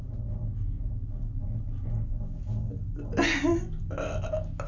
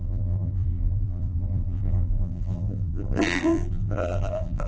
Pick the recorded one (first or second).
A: first